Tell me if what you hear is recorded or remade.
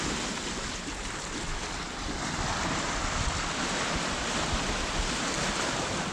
recorded